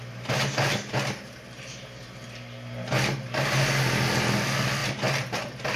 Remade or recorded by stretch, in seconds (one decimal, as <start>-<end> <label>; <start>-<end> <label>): 0.0-5.8 recorded